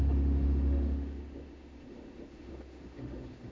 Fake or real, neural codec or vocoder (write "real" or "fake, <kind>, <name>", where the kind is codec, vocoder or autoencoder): fake, autoencoder, DAC-VAE